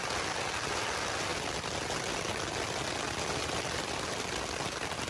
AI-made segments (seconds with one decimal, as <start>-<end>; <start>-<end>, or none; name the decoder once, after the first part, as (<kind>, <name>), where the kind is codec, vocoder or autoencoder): none